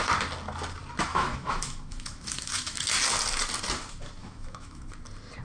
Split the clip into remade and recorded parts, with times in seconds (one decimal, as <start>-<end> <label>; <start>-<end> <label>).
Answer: 0.0-1.1 recorded; 1.1-2.9 remade; 2.9-4.2 recorded; 4.2-4.9 remade; 4.9-5.4 recorded

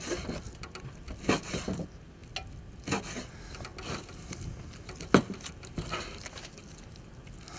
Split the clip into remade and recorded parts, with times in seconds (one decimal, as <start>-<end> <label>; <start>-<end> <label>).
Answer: 0.0-7.6 recorded